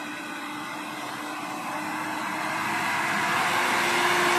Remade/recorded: recorded